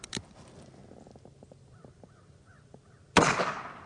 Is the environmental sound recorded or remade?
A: remade